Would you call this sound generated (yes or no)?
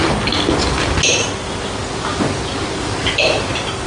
no